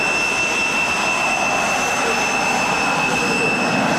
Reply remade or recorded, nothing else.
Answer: recorded